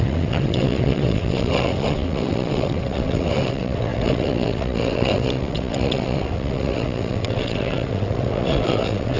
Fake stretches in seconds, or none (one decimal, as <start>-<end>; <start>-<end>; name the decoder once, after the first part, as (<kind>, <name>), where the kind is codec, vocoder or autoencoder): 0.0-9.2 (vocoder, WaveNeXt)